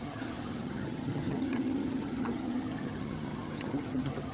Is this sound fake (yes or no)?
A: yes